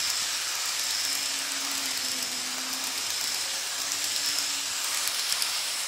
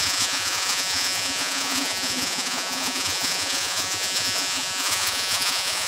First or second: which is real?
first